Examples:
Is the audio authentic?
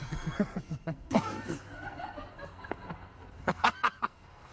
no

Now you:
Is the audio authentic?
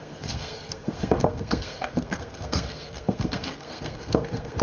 no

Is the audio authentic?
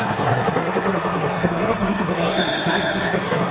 no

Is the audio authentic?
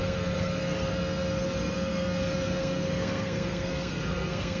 no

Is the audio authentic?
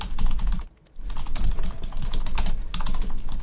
yes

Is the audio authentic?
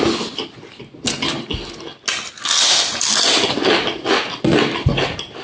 yes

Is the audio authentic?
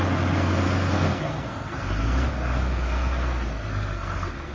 no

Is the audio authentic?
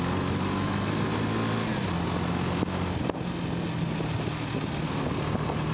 yes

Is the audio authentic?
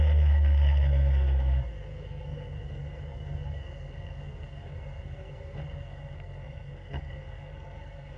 no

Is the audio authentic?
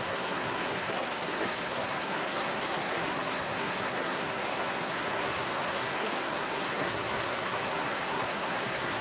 no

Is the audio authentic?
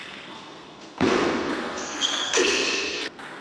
no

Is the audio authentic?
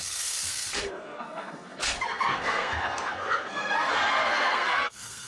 no